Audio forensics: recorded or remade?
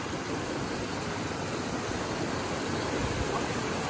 recorded